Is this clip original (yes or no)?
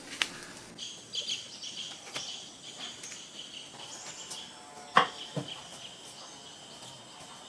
yes